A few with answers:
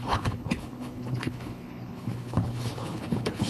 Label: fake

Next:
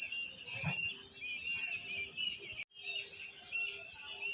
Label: real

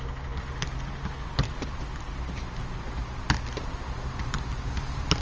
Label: real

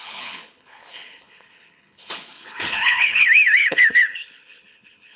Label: fake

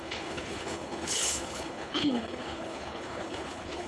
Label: fake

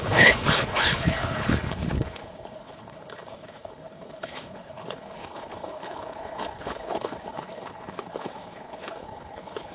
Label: fake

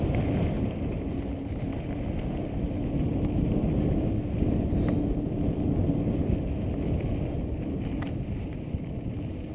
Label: real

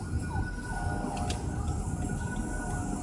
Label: real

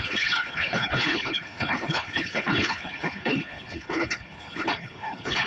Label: fake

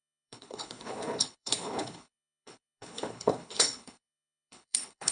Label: fake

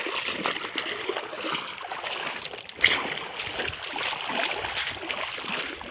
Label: real